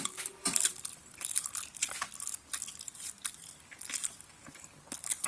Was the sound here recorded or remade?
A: recorded